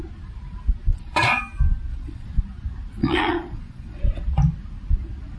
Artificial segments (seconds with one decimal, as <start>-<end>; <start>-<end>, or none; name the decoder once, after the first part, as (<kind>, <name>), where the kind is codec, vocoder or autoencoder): 0.9-1.4 (vocoder, Vocos); 1.9-2.4; 3.0-4.0